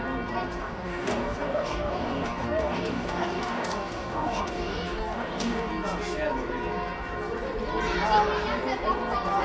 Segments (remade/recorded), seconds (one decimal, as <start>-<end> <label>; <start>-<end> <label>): 0.0-0.6 recorded; 0.6-5.7 remade; 5.7-9.4 recorded